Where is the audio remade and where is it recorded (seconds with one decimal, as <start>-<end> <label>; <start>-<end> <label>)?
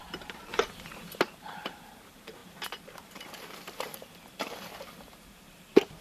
0.0-0.5 remade; 0.5-1.2 recorded; 1.2-6.0 remade